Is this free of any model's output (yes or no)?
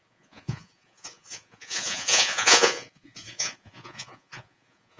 no